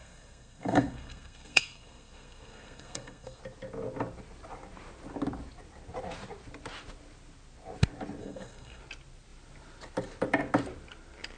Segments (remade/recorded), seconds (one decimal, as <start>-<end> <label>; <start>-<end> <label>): 0.0-3.4 remade; 3.4-8.2 recorded; 8.2-8.8 remade; 8.8-11.4 recorded